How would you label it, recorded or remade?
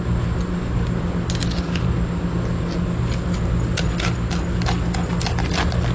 recorded